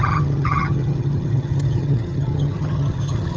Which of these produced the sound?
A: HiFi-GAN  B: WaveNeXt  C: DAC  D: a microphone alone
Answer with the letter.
A